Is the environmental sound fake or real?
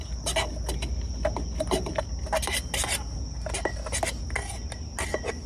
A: real